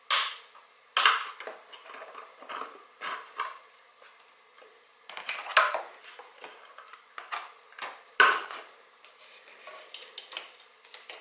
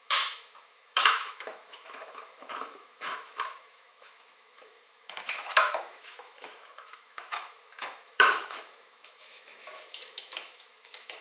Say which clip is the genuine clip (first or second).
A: first